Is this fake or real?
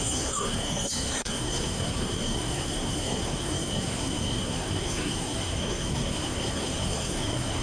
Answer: fake